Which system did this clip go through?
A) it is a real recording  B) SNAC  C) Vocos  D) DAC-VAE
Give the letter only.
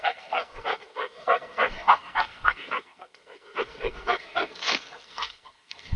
B